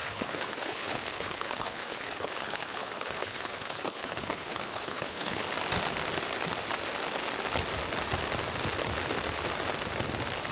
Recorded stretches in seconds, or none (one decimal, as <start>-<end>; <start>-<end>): 5.4-10.5